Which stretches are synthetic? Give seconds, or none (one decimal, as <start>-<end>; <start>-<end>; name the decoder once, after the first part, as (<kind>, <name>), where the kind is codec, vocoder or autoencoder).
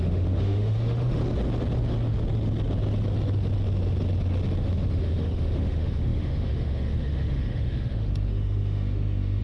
0.0-1.2 (autoencoder, DAC-VAE); 4.6-9.4